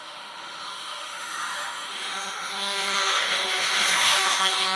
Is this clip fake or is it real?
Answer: fake